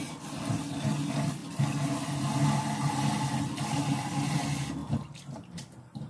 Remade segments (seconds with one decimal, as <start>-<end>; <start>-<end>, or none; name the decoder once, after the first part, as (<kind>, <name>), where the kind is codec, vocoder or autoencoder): 4.8-6.1 (vocoder, BigVGAN v2)